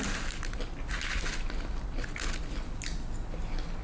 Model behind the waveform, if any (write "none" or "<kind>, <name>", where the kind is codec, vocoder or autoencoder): none